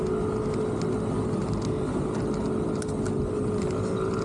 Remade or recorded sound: recorded